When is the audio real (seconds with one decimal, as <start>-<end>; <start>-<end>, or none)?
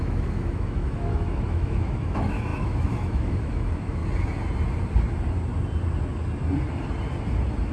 4.0-7.7